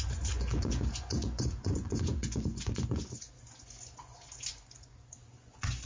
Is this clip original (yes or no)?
no